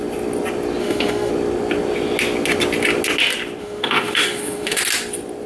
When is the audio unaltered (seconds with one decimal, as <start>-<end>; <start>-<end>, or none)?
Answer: 0.0-0.8; 1.3-3.6; 4.8-5.5